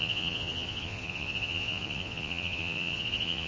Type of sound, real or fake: fake